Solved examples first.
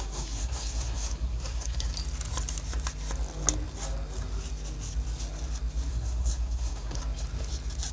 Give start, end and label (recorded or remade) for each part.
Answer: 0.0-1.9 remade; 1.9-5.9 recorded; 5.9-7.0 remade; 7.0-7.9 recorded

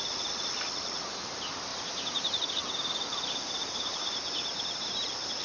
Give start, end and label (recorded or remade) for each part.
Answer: 0.0-1.7 recorded; 1.7-2.5 remade; 2.5-3.6 recorded; 3.6-5.4 remade

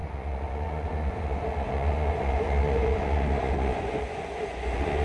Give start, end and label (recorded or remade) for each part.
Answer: 0.0-5.0 remade

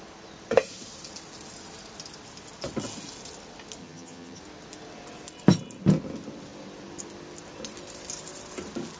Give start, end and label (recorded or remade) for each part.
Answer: 0.0-3.8 recorded; 3.8-4.4 remade; 4.4-9.0 recorded

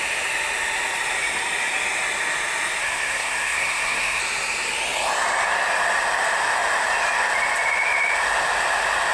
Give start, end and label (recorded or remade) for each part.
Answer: 0.0-2.8 recorded; 2.8-4.2 remade; 4.2-9.1 recorded

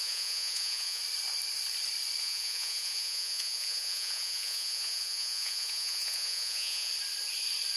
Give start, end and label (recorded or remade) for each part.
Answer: 0.0-1.0 remade; 1.0-2.2 recorded; 2.2-6.9 remade; 6.9-7.8 recorded